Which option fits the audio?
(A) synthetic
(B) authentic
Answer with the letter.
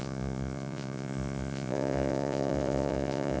A